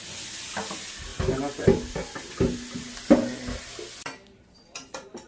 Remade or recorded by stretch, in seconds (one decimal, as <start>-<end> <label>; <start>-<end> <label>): 0.0-5.3 recorded